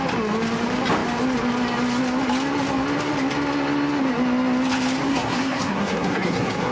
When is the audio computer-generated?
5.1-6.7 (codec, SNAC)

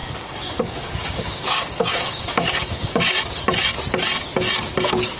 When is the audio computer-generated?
0.0-3.1 (codec, DAC)

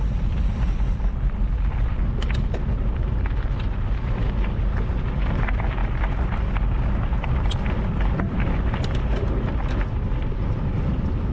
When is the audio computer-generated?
none

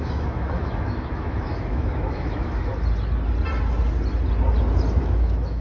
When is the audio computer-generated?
0.0-2.7 (autoencoder, DAC-VAE); 5.0-5.6

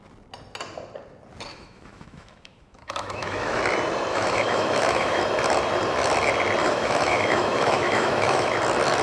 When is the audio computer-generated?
1.5-3.6 (autoencoder, DAC-VAE); 4.1-5.2; 6.6-8.5

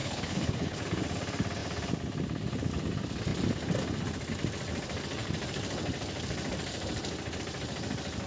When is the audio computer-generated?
0.0-0.8 (codec, HILCodec)

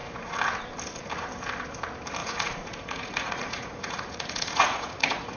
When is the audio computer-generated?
2.2-5.4 (vocoder, Vocos)